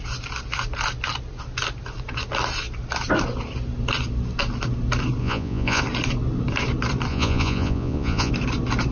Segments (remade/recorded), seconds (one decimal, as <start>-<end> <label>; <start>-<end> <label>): 0.0-5.2 recorded; 5.2-5.8 remade; 5.8-7.1 recorded; 7.1-8.3 remade; 8.3-8.9 recorded